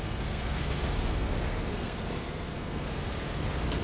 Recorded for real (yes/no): no